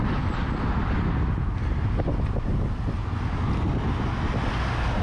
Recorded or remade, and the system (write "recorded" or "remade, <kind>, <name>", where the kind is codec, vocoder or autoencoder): recorded